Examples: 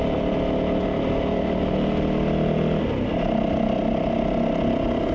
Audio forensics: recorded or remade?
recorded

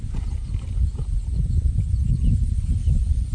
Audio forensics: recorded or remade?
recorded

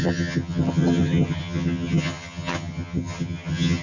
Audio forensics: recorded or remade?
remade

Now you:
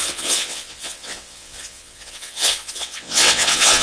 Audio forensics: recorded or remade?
remade